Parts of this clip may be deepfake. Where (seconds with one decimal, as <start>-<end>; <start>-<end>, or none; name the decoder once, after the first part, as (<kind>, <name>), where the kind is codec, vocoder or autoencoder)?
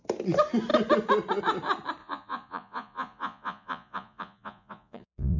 2.0-5.4 (vocoder, Vocos)